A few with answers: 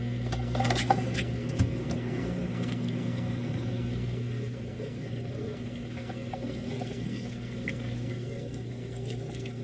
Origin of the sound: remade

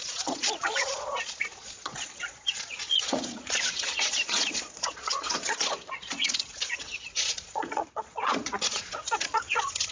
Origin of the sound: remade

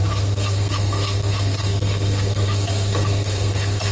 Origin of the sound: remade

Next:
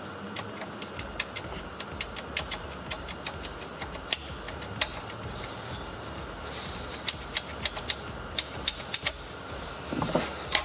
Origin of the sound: recorded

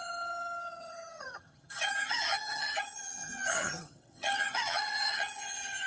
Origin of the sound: remade